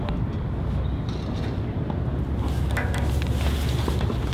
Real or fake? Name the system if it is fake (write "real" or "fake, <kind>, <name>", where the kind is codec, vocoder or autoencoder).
real